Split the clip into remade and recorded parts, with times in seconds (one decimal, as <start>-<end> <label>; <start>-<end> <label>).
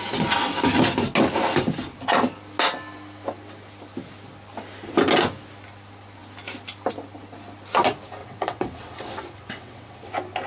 0.0-8.2 recorded; 8.2-10.1 remade; 10.1-10.5 recorded